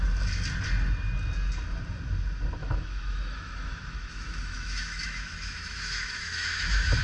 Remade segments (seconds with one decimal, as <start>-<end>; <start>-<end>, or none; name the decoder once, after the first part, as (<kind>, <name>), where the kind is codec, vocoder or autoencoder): 2.6-7.0 (autoencoder, DAC-VAE)